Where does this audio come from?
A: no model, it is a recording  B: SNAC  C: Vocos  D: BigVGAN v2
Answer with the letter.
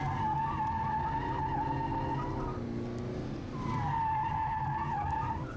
A